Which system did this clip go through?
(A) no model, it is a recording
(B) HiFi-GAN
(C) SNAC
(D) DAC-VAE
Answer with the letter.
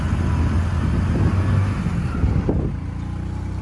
A